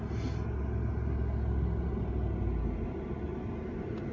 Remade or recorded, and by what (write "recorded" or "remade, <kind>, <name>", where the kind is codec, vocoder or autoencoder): recorded